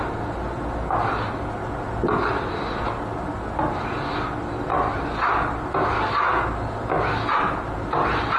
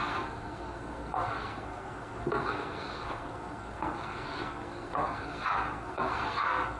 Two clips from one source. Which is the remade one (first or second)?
second